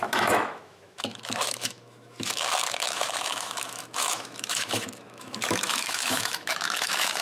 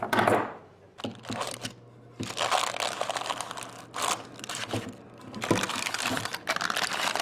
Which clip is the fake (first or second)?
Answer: first